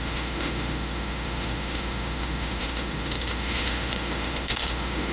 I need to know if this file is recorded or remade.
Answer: remade